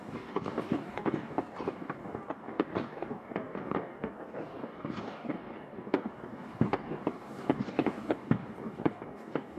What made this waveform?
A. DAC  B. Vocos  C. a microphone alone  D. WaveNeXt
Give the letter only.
A